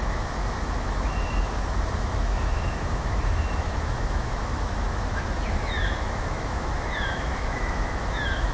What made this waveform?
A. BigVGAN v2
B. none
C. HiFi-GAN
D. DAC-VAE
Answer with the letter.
D